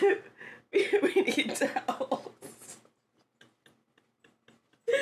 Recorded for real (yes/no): yes